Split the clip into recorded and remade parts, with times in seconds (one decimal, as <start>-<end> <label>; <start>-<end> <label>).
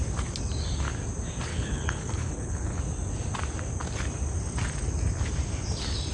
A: 0.0-1.5 recorded; 1.5-2.8 remade; 2.8-6.1 recorded